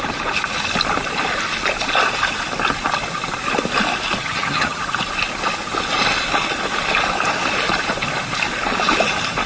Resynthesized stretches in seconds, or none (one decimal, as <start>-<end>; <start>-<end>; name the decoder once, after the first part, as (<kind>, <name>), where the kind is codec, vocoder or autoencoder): 4.2-4.8 (vocoder, HiFi-GAN)